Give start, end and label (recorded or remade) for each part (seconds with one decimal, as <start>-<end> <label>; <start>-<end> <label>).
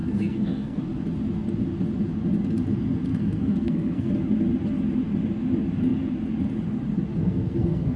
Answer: 0.0-0.8 remade; 0.8-3.1 recorded; 3.1-4.1 remade; 4.1-7.2 recorded; 7.2-8.0 remade